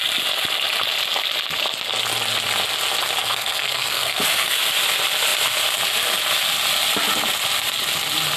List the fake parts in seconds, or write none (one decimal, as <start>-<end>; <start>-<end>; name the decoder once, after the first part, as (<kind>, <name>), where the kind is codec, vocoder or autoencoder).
3.2-4.6 (codec, SNAC)